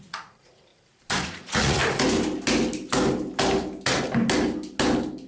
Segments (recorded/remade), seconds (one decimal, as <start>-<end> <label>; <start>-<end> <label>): 0.0-0.7 remade; 0.7-1.3 recorded; 1.3-1.8 remade; 1.8-5.3 recorded